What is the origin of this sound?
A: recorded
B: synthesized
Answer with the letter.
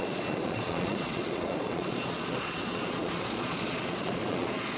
B